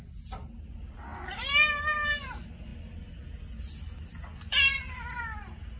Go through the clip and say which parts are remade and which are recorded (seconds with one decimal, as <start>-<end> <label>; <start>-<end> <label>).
0.0-5.8 recorded